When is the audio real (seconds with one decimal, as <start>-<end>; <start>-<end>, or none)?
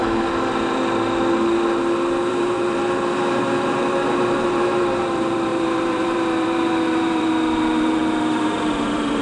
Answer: 0.0-2.2